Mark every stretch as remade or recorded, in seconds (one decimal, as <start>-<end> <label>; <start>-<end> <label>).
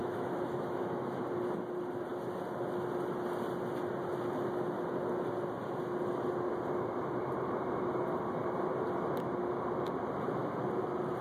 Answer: 0.0-1.2 remade; 1.2-11.2 recorded